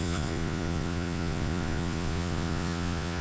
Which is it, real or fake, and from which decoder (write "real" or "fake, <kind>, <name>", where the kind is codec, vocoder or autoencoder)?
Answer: fake, vocoder, Vocos